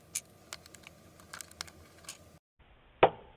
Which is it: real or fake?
real